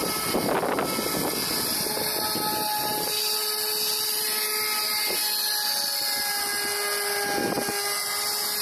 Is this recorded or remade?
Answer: recorded